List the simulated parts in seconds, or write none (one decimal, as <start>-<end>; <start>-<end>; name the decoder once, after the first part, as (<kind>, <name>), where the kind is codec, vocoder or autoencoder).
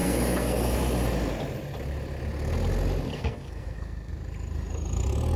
0.0-0.8 (codec, SNAC); 3.1-4.1